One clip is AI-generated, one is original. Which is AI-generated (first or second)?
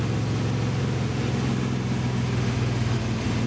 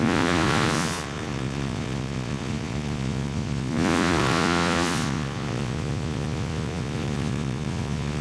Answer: second